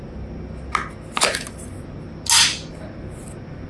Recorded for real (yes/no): yes